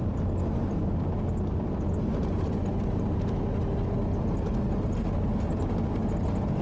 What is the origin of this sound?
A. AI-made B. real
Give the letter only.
B